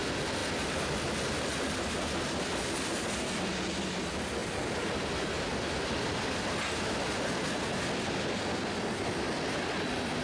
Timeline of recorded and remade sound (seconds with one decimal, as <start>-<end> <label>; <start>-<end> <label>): 0.0-10.2 recorded